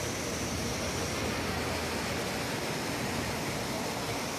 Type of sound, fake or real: real